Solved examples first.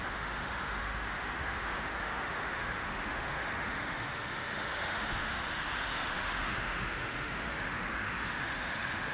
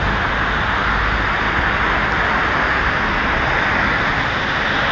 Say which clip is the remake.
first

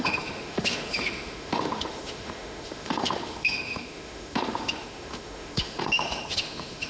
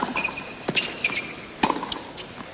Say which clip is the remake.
first